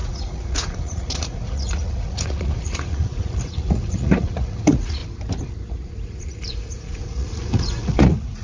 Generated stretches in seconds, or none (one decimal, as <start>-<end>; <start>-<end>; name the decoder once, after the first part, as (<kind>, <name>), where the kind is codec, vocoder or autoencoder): 0.0-5.0 (vocoder, Vocos); 5.7-8.4